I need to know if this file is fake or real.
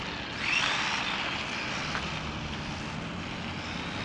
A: real